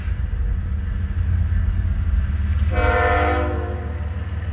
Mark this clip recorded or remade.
recorded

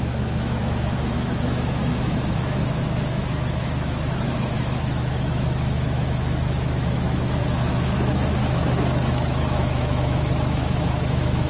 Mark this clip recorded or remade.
remade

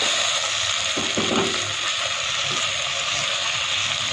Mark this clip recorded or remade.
recorded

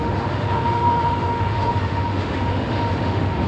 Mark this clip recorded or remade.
remade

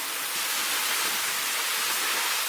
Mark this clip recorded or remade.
recorded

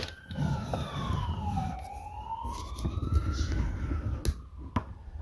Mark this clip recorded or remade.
recorded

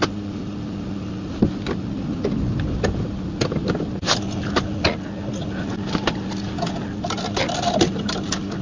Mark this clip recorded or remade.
recorded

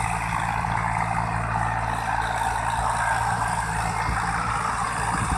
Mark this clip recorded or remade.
recorded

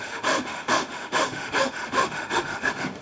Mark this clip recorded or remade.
remade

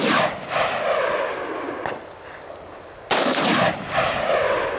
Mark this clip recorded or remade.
recorded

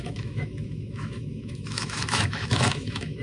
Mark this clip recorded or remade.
remade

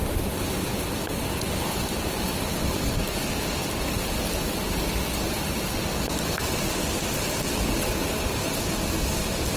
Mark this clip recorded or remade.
recorded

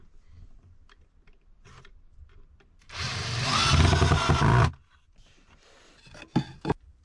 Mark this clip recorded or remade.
recorded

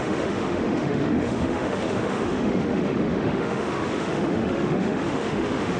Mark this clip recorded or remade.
remade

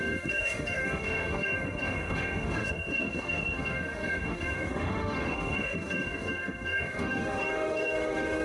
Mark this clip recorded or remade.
remade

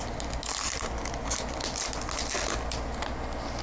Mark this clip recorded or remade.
recorded